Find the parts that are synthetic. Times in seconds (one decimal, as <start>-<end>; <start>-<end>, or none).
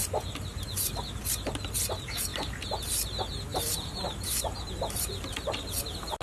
3.5-6.2